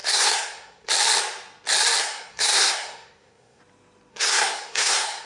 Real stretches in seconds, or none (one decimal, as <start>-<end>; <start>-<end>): 0.9-2.0; 3.6-4.1